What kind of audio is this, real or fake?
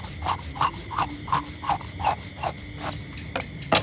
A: real